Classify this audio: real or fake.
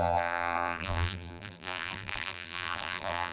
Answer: fake